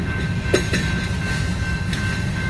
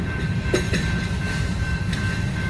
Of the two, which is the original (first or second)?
first